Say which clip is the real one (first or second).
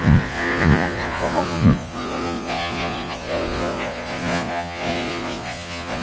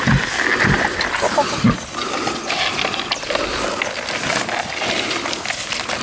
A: second